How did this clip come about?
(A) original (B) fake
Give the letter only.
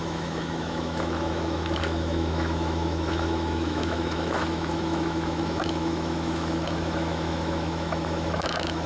B